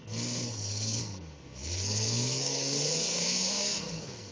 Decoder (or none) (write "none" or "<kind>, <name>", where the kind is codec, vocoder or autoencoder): codec, SNAC